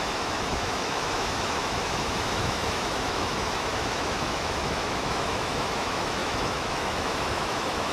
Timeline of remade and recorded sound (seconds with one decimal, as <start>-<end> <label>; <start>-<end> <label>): 0.0-7.9 remade